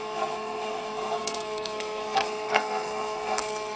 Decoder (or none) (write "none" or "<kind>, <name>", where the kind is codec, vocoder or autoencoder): codec, SNAC